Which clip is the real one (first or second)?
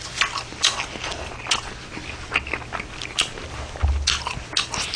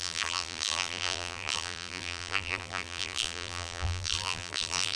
first